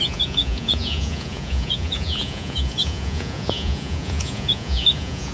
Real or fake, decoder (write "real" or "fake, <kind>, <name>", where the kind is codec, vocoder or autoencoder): fake, vocoder, Vocos